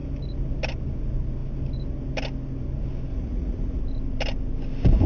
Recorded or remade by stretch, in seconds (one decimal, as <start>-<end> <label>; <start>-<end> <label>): 0.0-3.1 recorded; 3.1-3.8 remade; 3.8-5.1 recorded